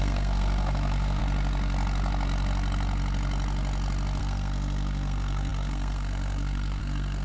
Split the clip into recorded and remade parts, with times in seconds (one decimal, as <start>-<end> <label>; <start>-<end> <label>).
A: 0.0-1.2 remade; 1.2-4.2 recorded; 4.2-7.2 remade